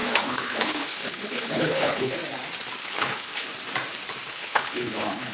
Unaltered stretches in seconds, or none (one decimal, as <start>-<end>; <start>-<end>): 2.2-2.8; 3.5-4.3